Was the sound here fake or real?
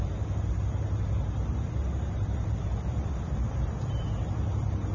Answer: real